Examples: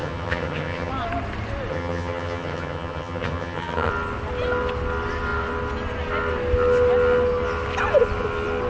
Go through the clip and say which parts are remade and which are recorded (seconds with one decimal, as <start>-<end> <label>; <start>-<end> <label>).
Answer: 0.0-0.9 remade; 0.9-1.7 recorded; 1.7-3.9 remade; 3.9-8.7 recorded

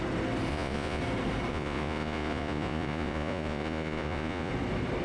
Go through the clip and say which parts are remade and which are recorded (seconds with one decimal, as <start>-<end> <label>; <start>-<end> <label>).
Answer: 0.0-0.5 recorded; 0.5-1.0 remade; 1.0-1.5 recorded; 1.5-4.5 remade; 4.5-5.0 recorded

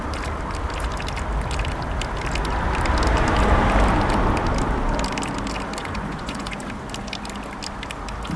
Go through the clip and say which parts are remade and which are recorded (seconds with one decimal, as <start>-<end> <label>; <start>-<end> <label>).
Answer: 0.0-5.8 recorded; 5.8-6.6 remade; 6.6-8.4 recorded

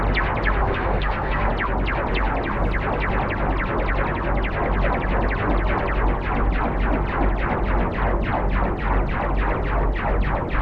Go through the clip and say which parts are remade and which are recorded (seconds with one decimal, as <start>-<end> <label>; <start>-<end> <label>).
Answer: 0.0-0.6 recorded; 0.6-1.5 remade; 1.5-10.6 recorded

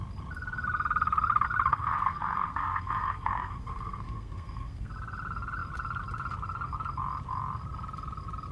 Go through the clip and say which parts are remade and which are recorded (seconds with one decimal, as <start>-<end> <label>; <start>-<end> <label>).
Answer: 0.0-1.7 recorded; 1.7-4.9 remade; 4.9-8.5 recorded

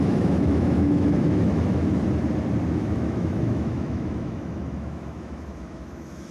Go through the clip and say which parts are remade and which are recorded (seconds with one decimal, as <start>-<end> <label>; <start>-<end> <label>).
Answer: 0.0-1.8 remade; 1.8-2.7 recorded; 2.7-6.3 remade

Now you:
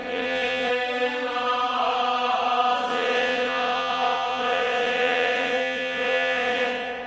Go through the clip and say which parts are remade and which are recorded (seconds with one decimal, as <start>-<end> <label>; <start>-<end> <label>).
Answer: 0.0-0.7 remade; 0.7-2.9 recorded; 2.9-7.1 remade